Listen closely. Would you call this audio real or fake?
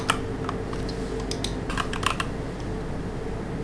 real